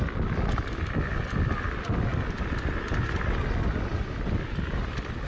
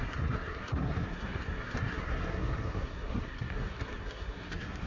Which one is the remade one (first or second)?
second